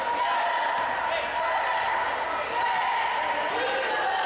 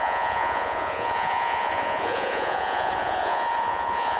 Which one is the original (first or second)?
first